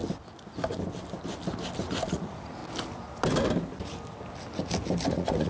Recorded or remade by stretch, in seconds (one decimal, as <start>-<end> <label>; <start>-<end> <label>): 0.0-2.1 recorded; 2.1-2.6 remade; 2.6-5.1 recorded; 5.1-5.5 remade